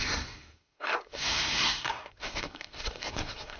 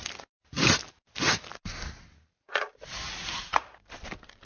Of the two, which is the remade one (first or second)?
first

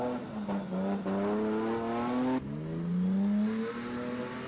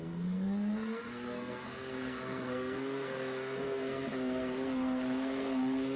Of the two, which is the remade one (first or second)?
second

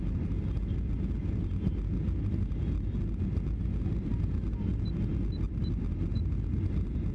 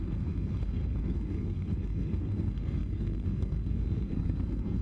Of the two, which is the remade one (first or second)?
second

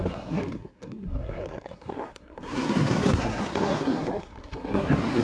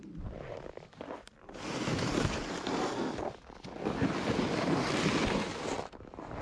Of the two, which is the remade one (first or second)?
first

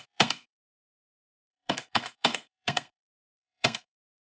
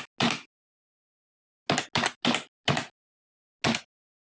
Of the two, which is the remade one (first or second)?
first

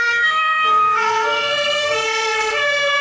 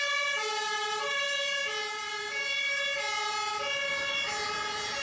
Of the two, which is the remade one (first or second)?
first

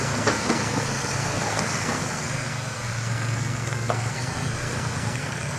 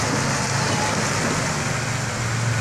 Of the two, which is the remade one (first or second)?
first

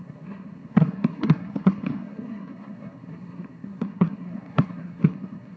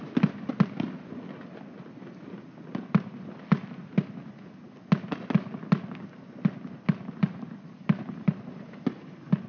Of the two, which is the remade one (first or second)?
first